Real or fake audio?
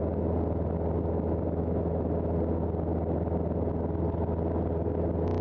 real